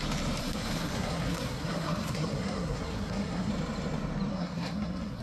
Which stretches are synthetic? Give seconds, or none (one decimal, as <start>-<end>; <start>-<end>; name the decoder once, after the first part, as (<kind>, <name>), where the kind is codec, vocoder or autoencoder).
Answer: 0.4-3.5 (codec, SNAC); 4.3-5.2